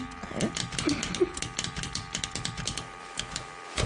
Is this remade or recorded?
remade